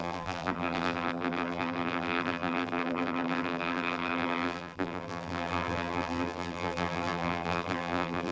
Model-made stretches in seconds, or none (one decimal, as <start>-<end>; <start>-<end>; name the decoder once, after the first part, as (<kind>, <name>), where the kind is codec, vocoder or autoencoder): 0.0-8.3 (vocoder, BigVGAN v2)